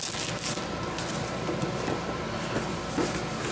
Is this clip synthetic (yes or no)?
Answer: no